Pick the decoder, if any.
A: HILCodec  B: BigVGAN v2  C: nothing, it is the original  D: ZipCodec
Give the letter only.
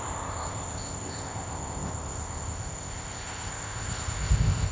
D